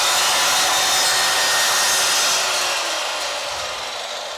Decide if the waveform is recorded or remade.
recorded